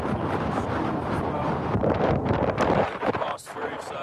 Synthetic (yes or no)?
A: yes